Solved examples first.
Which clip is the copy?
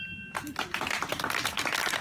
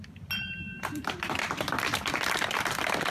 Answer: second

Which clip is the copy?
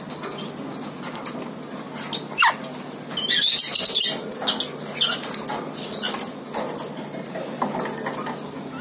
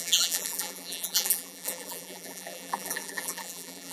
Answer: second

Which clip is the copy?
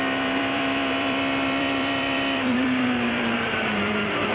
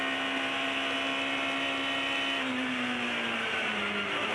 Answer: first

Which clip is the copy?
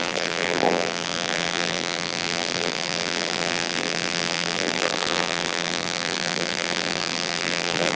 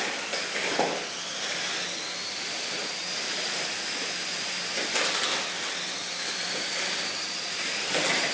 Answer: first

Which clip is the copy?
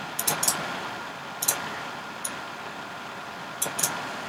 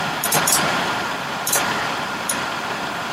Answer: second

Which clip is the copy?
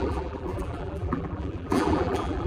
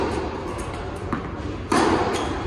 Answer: first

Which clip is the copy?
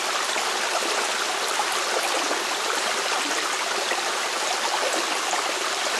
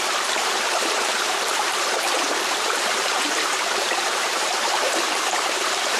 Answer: second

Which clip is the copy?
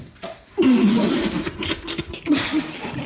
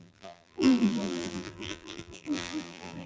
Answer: second